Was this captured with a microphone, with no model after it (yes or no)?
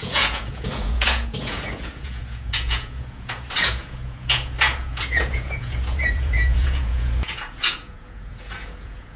no